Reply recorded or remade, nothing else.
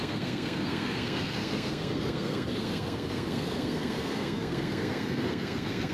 remade